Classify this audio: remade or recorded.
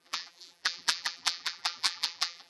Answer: remade